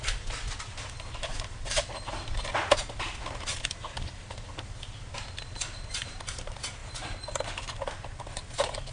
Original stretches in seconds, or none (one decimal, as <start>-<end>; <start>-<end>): 0.0-8.9